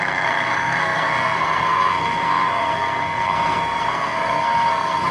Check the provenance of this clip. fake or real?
fake